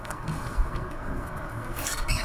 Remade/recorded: remade